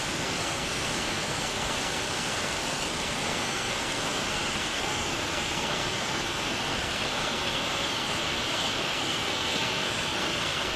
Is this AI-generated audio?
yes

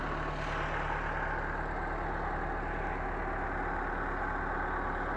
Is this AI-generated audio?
no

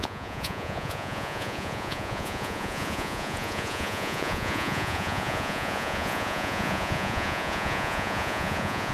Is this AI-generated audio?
yes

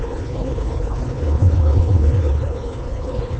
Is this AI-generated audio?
yes